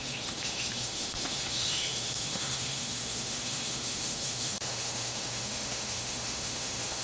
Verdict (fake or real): fake